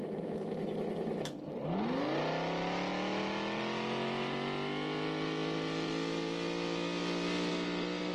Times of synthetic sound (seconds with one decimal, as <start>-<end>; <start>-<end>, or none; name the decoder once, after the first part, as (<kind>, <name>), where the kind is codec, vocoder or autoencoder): 0.0-1.3 (autoencoder, DAC-VAE)